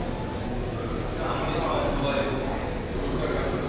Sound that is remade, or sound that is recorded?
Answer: recorded